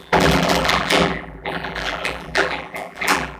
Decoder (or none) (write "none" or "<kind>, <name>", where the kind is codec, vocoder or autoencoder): vocoder, BigVGAN v2